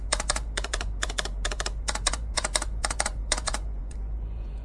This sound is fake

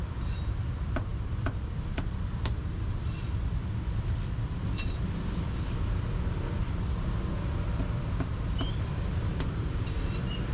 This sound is fake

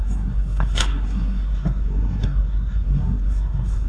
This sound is fake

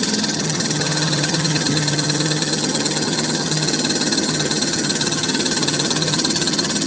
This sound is fake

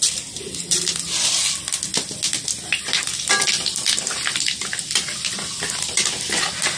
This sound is real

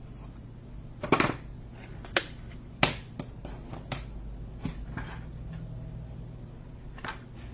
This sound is real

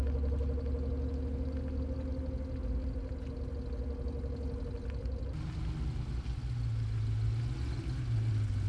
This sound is real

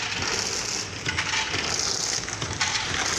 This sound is real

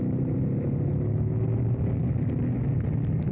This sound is real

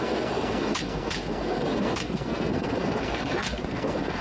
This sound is fake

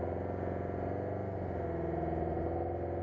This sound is real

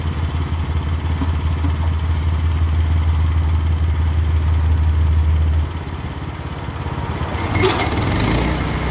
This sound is real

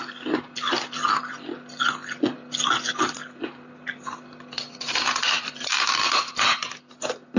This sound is real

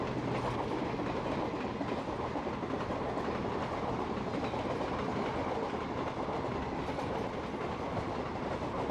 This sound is real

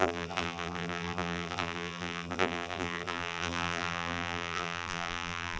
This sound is fake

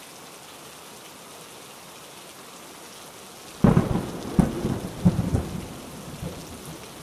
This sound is real